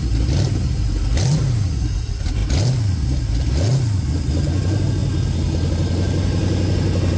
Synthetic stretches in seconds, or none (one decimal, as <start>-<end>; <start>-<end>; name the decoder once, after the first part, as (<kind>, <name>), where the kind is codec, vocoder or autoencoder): none

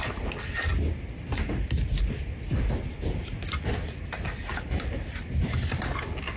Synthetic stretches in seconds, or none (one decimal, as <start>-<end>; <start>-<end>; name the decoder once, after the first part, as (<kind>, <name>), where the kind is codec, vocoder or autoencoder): none